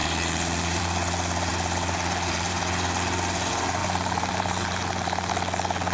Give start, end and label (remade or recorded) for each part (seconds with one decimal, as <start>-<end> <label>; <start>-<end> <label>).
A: 0.0-0.8 remade; 0.8-1.5 recorded; 1.5-2.6 remade; 2.6-3.8 recorded; 3.8-5.3 remade; 5.3-5.9 recorded